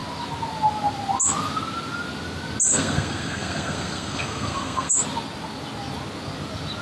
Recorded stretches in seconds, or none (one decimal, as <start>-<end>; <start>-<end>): 0.0-2.7; 4.9-6.8